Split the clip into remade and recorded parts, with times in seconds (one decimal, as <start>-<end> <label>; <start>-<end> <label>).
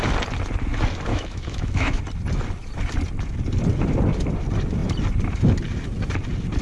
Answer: 0.0-1.1 recorded; 1.1-2.0 remade; 2.0-6.6 recorded